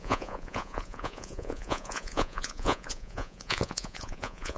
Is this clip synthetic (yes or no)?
yes